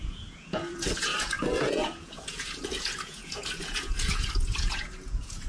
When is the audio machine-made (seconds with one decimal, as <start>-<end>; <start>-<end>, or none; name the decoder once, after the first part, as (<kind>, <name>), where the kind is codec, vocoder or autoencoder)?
0.0-5.5 (vocoder, Vocos)

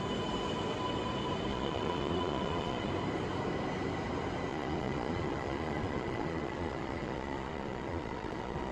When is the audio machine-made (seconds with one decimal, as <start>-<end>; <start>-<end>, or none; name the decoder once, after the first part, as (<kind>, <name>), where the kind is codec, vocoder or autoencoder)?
1.5-2.9 (vocoder, Vocos); 4.5-8.7

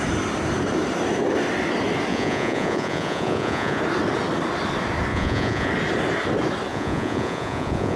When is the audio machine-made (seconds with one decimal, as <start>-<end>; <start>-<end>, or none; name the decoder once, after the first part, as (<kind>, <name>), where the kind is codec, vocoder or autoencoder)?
2.1-3.8 (vocoder, Vocos); 5.1-5.7; 6.7-8.0

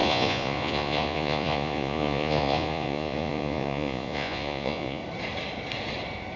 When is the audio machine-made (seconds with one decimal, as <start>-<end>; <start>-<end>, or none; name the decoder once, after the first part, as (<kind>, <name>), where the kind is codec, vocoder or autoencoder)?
0.0-5.0 (vocoder, Vocos)

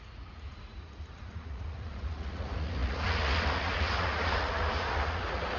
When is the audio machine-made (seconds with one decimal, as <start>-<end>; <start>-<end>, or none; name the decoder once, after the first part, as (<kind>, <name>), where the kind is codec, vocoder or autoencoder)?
0.0-5.6 (vocoder, Vocos)

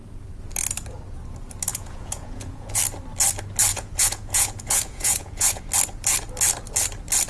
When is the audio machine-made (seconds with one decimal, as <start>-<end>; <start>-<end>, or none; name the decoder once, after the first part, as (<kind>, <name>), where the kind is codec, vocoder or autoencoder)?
1.7-2.8 (vocoder, Vocos); 3.7-5.6